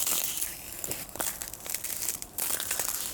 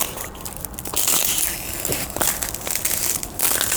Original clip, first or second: second